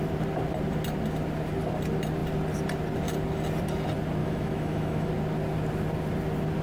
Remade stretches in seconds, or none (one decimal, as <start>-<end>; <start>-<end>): 4.2-5.1